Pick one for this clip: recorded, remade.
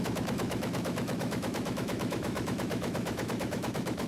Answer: remade